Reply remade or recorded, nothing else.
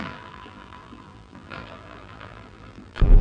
remade